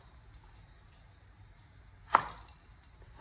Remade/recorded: recorded